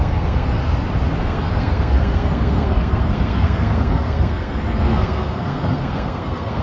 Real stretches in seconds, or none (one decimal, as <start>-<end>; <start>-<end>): 0.6-1.2